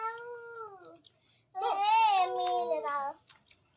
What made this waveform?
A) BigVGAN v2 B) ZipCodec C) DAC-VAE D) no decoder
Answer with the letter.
D